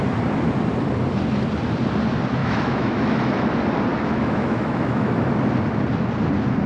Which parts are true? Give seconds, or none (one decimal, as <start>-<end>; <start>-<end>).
0.0-2.4; 3.3-3.9; 5.3-6.7